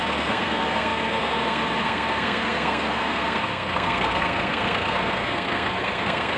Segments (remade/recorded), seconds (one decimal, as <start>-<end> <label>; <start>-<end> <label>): 0.0-6.4 remade